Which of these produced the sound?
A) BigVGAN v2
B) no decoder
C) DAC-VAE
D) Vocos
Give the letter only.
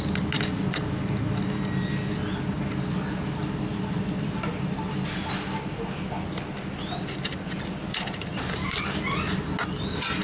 B